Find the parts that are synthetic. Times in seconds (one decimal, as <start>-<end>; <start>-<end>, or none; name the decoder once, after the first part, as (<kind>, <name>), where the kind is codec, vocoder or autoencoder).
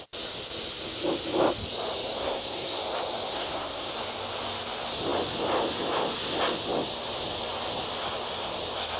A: 2.2-2.8 (codec, SNAC); 3.3-3.9